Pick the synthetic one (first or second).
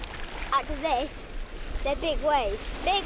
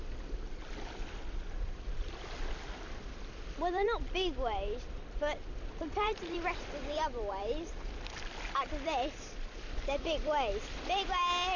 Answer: second